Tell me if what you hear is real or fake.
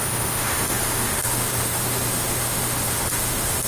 fake